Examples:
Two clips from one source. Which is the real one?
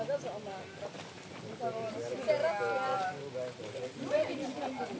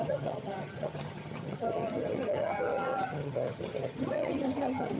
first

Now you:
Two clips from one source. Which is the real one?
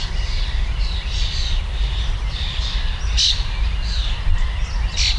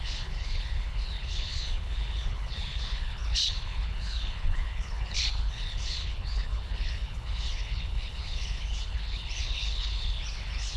first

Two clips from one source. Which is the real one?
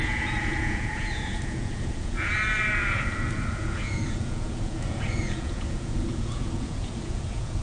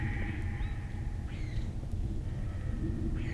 second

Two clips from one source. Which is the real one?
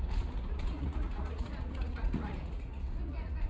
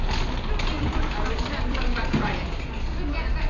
second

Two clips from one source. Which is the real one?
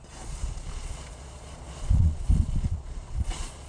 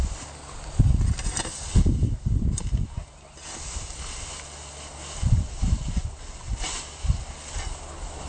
second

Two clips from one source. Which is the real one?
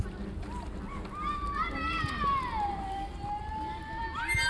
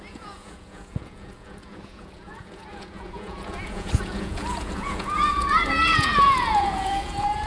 first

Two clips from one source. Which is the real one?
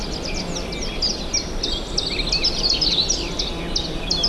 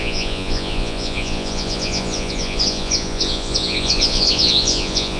first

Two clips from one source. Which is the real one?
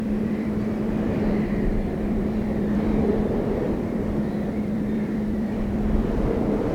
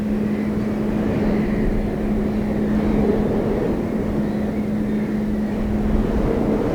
second